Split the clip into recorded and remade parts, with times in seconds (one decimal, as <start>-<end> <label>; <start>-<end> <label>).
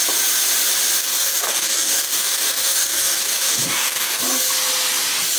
0.0-1.0 recorded; 1.0-4.2 remade; 4.2-5.4 recorded